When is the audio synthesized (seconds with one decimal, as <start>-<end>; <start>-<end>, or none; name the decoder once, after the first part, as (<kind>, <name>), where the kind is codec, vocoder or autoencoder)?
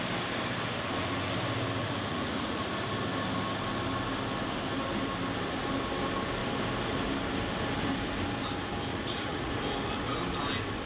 1.8-2.7 (vocoder, Vocos); 8.9-9.5